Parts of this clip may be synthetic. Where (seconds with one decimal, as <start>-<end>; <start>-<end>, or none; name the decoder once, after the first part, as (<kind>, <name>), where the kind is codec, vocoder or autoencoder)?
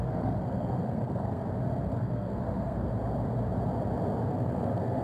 0.0-1.4 (codec, SNAC); 1.9-2.9; 4.3-5.0